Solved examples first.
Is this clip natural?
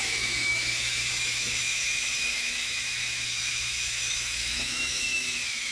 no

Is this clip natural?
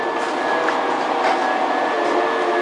yes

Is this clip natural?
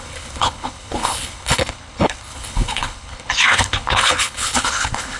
no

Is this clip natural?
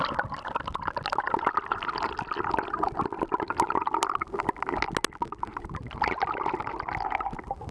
yes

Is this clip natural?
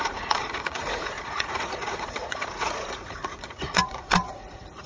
no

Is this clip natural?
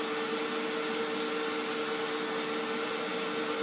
yes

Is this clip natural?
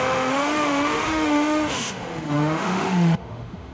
no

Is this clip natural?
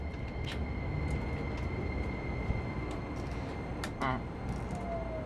yes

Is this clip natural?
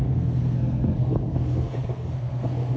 no